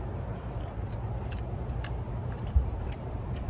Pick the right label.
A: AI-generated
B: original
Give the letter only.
A